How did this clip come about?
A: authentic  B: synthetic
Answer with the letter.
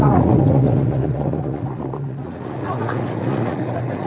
B